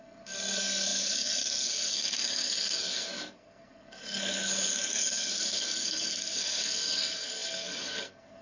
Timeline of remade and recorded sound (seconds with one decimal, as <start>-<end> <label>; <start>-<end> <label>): 0.0-8.4 remade